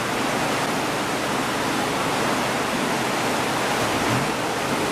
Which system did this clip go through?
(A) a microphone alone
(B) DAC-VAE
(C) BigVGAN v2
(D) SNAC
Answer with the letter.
A